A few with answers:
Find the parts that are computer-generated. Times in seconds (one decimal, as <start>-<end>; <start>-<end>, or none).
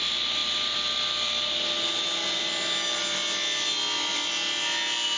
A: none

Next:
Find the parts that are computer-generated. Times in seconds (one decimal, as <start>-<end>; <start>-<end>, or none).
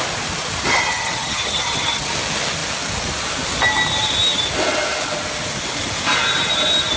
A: 0.9-2.1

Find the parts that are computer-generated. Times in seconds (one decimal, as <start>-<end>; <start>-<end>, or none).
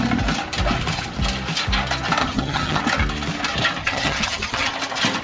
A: 2.2-2.8; 3.8-4.7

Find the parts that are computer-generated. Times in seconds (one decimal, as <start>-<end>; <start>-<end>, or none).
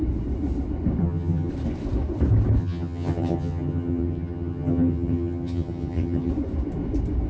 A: 1.0-1.5; 2.6-6.3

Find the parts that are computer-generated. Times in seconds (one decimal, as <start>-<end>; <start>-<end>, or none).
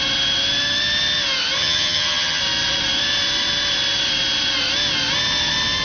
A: 1.6-2.4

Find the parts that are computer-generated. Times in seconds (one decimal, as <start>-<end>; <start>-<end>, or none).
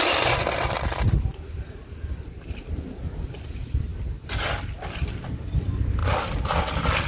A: none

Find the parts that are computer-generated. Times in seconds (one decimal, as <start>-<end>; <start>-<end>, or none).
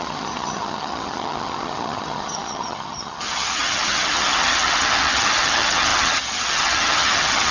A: 0.0-7.5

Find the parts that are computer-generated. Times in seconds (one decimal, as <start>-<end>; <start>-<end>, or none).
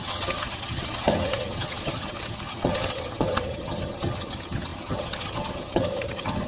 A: 0.0-6.5